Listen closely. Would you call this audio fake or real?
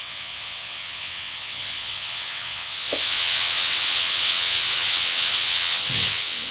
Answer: fake